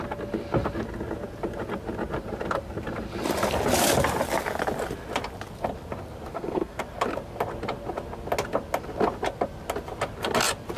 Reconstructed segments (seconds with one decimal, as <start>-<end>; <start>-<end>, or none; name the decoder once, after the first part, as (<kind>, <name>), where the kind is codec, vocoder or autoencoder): 6.3-6.8 (codec, SNAC)